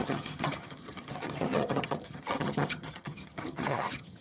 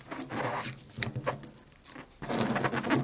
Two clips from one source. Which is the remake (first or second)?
first